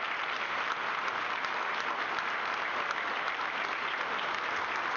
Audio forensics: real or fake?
real